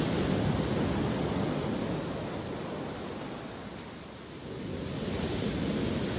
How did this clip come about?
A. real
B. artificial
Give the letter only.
A